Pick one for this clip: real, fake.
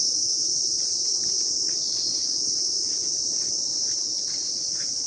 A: fake